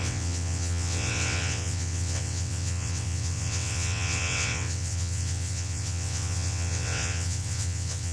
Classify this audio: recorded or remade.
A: remade